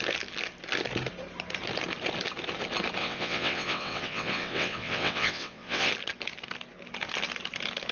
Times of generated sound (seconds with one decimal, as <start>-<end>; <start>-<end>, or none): 3.0-5.9